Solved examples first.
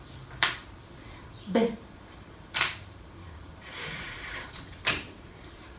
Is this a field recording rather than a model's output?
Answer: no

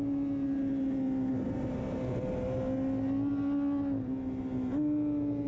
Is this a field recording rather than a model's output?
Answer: yes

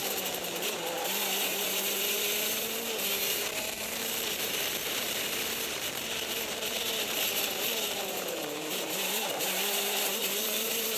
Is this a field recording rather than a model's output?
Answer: no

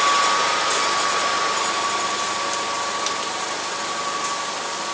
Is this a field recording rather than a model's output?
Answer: yes